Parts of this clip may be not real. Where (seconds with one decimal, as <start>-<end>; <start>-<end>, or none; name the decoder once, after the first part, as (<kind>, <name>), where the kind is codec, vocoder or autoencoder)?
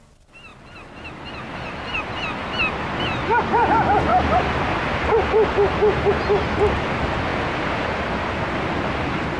7.3-8.0 (vocoder, Vocos)